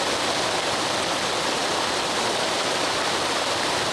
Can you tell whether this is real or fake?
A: real